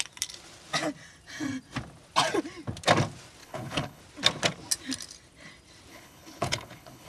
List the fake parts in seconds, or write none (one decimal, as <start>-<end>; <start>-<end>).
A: 3.4-4.0; 5.9-7.1